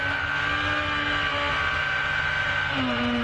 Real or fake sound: real